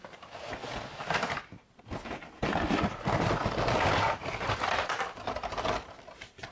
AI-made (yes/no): no